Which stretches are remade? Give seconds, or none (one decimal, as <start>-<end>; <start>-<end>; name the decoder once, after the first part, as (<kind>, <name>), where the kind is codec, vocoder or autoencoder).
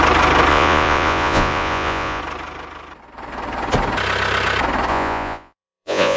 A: 0.5-2.2 (vocoder, Vocos); 4.9-6.2